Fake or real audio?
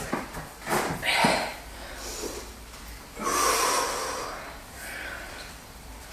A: real